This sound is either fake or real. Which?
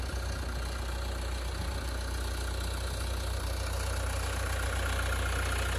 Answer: real